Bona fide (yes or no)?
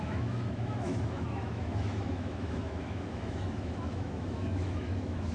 no